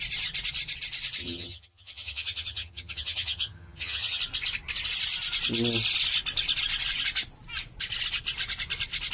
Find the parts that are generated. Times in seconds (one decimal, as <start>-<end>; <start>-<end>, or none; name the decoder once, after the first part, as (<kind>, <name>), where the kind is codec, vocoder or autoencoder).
1.2-4.2 (vocoder, HiFi-GAN)